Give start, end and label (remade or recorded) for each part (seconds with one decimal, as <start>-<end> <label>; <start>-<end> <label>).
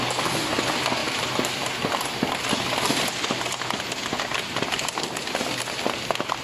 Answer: 0.0-1.0 recorded; 1.0-1.7 remade; 1.7-6.4 recorded